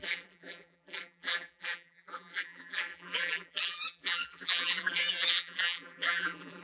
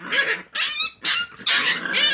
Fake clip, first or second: first